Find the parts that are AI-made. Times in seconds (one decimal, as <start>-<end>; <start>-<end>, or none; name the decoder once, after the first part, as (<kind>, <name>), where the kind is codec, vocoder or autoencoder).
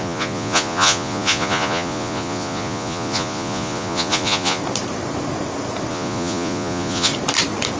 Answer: 0.0-4.6 (vocoder, Vocos); 5.9-7.1